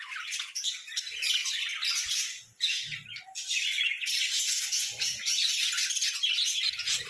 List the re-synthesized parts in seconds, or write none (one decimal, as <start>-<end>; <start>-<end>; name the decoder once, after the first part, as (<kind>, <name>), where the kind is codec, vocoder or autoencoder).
none